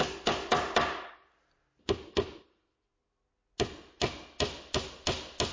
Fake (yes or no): no